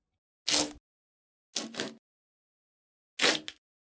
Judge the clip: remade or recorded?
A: recorded